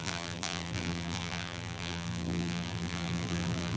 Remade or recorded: remade